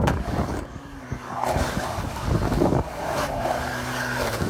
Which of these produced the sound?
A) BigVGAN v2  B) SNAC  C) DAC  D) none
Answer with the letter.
C